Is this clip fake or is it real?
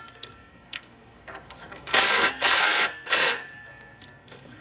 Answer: fake